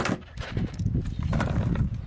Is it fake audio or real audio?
real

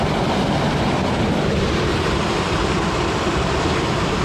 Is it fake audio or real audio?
real